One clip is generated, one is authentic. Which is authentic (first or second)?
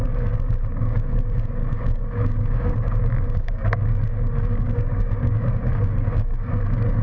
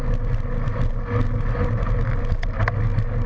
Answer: second